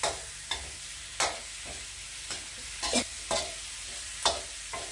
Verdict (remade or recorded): recorded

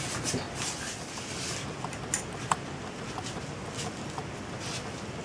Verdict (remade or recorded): recorded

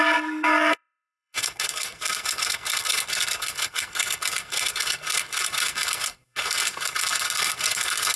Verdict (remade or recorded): remade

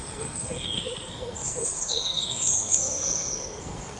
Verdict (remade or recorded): remade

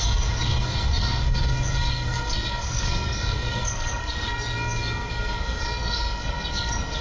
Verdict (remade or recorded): remade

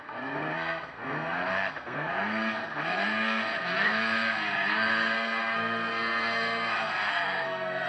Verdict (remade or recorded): remade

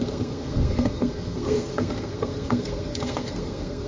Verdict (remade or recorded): remade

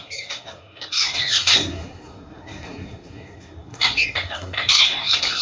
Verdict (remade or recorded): remade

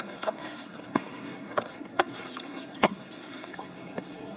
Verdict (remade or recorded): remade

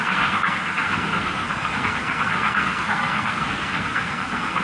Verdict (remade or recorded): remade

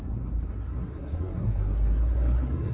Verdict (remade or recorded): remade